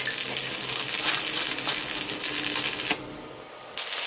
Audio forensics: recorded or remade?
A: recorded